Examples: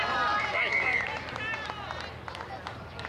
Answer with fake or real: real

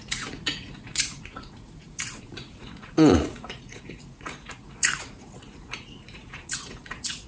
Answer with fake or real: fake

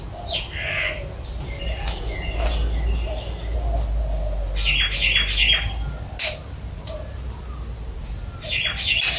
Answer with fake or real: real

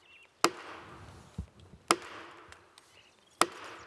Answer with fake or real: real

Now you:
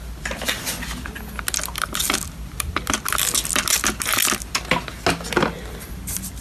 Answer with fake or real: real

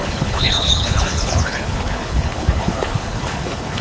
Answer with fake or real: fake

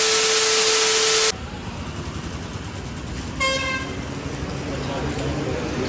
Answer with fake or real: real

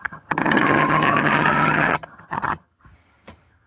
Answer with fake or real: fake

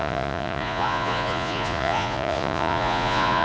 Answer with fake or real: fake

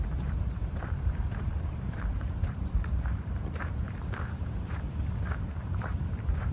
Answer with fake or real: fake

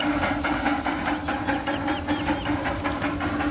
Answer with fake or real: real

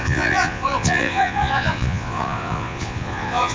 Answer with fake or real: fake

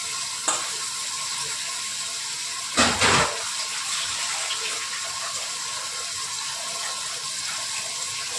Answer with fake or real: real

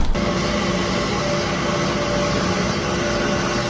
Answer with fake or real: real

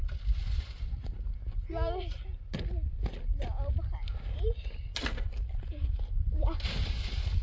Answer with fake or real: real